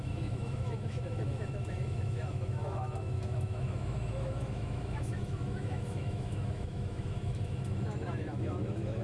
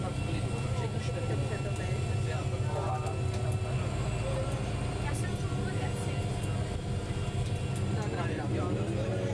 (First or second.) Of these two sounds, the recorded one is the second